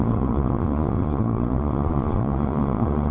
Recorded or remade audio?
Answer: remade